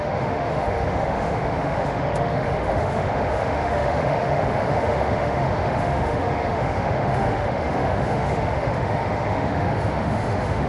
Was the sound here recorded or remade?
remade